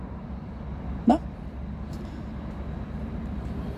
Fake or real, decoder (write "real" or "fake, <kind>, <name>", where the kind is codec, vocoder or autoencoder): real